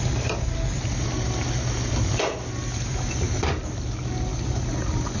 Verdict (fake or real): real